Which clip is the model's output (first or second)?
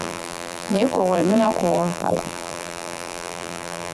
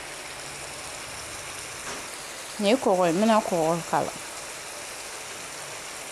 first